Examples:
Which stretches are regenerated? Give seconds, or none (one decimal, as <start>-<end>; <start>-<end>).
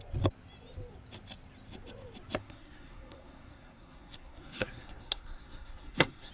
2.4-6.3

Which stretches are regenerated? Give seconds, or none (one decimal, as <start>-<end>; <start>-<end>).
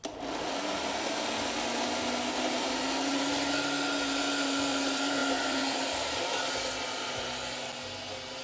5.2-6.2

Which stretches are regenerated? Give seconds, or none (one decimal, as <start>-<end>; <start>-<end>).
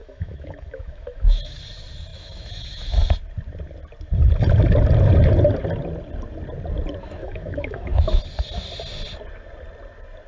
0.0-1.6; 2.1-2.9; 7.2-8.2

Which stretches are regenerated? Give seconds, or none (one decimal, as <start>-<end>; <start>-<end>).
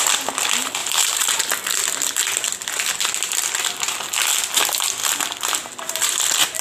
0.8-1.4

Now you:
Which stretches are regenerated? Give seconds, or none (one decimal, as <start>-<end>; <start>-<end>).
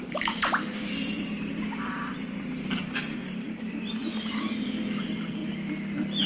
0.0-1.5; 2.2-3.2; 3.8-5.4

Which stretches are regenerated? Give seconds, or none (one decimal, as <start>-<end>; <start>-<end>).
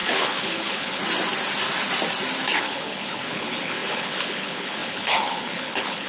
0.0-1.0; 2.5-6.1